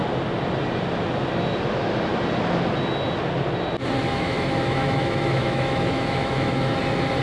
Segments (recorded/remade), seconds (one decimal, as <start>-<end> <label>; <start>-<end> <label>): 0.0-4.1 recorded; 4.1-6.8 remade; 6.8-7.2 recorded